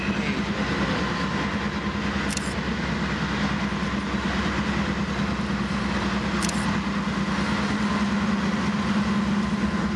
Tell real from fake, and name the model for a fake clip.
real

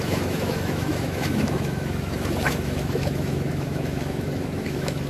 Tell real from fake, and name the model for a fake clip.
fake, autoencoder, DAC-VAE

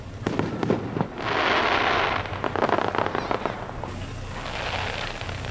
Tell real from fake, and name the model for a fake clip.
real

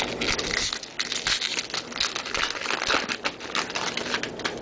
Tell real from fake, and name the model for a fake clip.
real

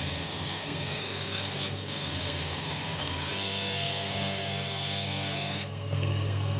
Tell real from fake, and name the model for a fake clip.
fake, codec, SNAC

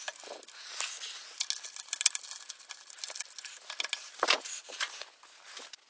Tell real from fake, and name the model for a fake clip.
real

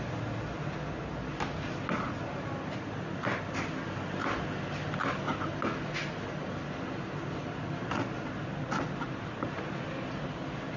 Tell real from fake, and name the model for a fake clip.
real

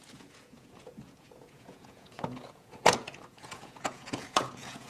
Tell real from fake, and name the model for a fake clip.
fake, vocoder, Vocos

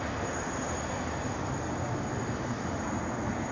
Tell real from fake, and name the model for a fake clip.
real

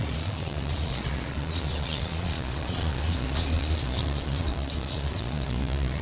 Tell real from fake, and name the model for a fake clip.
fake, vocoder, Vocos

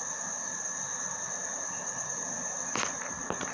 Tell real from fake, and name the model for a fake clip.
real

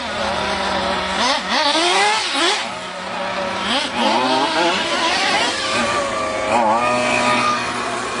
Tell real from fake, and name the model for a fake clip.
real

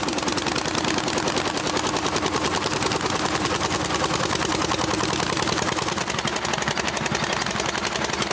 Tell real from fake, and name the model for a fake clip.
real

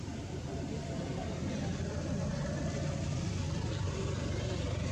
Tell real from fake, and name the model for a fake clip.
real